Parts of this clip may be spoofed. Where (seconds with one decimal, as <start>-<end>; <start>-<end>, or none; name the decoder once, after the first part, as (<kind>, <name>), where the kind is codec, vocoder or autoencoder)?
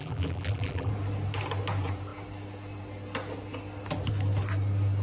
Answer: 0.0-0.9 (vocoder, BigVGAN v2)